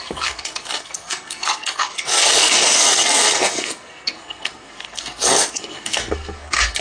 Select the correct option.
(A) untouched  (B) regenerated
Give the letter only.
B